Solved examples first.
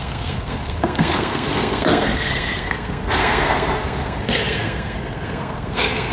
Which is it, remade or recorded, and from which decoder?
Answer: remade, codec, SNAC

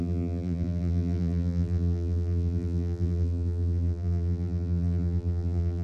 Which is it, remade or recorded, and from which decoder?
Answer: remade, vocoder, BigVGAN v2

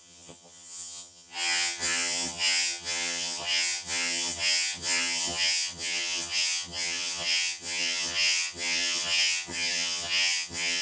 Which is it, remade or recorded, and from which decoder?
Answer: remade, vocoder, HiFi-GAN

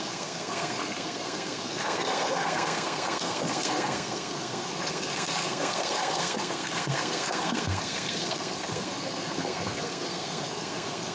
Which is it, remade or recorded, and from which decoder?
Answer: remade, codec, SNAC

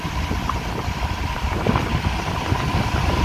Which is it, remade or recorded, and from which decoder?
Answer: recorded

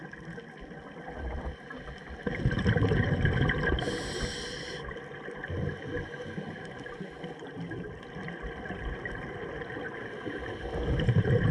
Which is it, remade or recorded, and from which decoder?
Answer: recorded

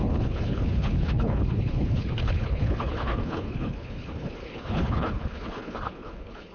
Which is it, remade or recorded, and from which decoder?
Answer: remade, codec, HILCodec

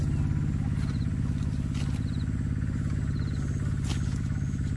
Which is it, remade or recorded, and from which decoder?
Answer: recorded